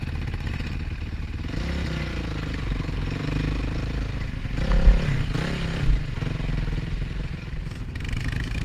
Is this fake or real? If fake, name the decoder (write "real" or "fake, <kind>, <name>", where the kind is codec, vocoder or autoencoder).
real